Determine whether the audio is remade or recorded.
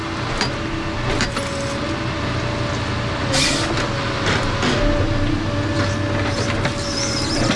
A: recorded